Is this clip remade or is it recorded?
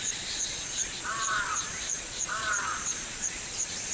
remade